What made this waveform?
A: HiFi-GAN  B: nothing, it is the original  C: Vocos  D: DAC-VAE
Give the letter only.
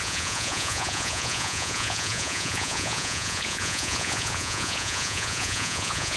C